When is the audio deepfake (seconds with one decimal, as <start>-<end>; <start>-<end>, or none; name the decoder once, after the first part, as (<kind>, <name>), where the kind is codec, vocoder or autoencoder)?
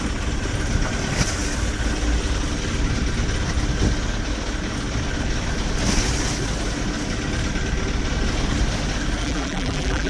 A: 9.2-10.1 (vocoder, BigVGAN v2)